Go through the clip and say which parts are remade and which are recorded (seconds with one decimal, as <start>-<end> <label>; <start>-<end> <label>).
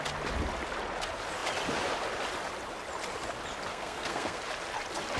0.0-3.7 recorded; 3.7-4.4 remade; 4.4-5.2 recorded